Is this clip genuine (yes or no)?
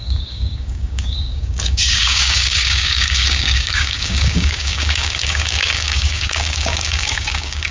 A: no